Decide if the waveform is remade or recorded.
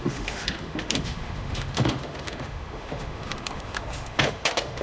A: remade